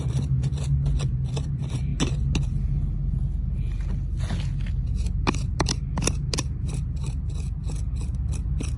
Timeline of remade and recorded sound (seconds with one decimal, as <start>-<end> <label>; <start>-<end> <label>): 0.0-8.8 recorded